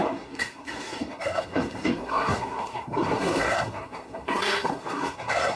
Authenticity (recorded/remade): remade